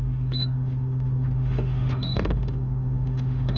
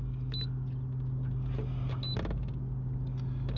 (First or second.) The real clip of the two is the second